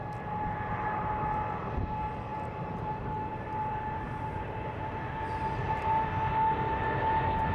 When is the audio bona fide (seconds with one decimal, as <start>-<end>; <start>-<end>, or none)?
0.0-2.3; 4.8-7.5